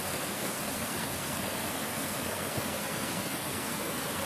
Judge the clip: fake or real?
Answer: fake